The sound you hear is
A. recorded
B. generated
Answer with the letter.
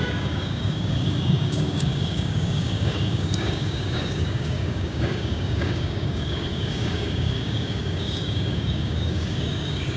B